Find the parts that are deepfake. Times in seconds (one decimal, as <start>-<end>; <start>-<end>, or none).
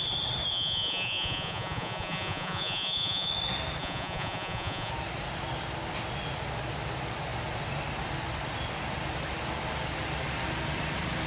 0.5-3.3; 3.8-4.9